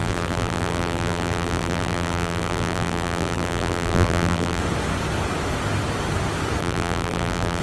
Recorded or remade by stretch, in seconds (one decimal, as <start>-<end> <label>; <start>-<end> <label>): 0.0-4.6 remade; 4.6-6.6 recorded; 6.6-7.6 remade